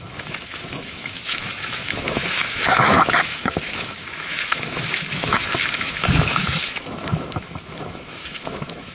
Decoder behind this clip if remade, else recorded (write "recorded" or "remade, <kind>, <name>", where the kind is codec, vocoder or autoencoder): remade, autoencoder, DAC-VAE